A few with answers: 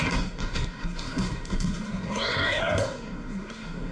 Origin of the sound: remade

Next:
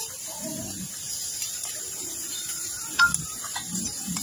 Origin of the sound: remade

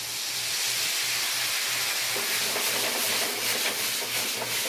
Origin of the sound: remade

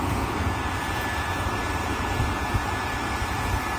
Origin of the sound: remade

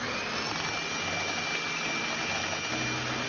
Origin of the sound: recorded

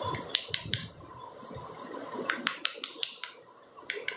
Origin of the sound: remade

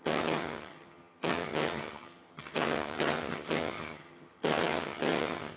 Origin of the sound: remade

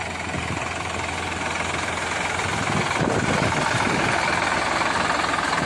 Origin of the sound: recorded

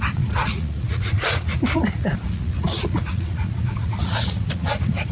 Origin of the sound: remade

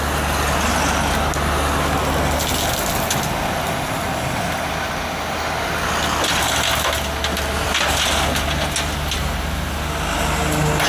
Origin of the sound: recorded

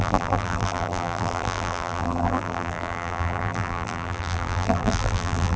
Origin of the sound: remade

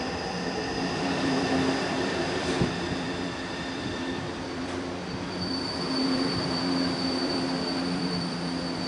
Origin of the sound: remade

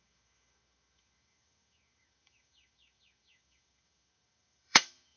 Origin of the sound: remade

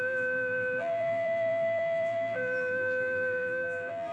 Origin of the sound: remade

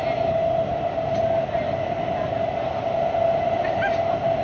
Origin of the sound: recorded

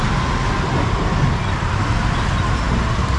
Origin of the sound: recorded